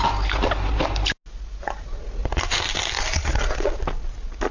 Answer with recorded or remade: recorded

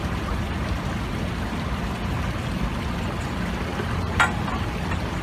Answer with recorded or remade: recorded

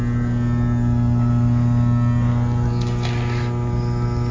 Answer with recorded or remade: recorded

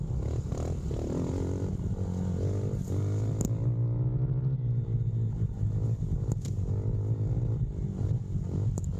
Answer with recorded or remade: recorded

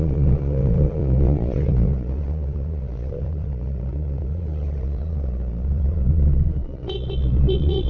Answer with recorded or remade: remade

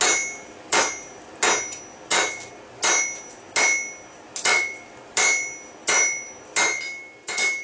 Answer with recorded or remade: recorded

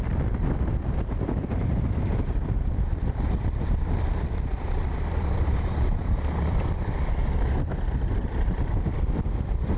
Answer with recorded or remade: remade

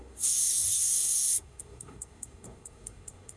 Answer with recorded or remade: remade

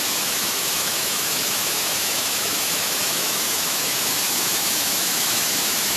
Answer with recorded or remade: remade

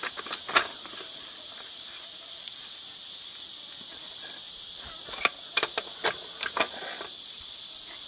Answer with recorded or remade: recorded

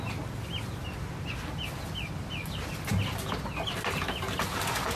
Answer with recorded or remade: recorded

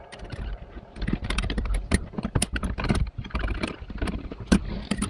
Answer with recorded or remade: remade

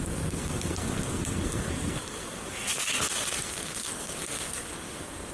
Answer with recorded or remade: remade